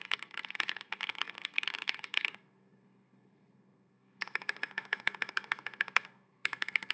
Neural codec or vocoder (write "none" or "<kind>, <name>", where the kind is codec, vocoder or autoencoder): codec, SNAC